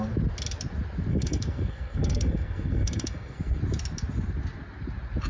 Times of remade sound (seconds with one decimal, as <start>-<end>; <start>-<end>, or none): 1.1-3.6